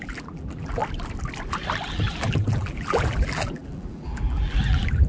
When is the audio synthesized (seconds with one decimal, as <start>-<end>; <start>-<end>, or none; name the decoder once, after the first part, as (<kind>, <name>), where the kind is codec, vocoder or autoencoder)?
0.0-0.8 (vocoder, BigVGAN v2); 1.9-5.1